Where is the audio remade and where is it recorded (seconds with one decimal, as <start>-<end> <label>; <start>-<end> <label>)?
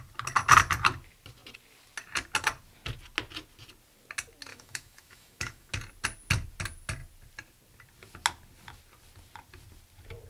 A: 0.0-4.5 recorded; 4.5-5.7 remade; 5.7-10.3 recorded